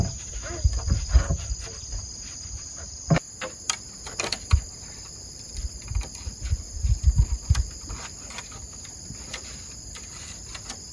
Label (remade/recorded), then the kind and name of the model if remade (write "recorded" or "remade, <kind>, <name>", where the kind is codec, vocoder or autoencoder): remade, vocoder, BigVGAN v2